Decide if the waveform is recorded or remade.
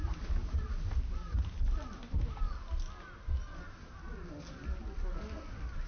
recorded